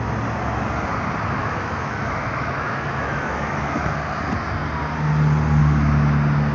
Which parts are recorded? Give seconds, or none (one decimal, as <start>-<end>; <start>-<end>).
0.0-1.4; 3.9-6.5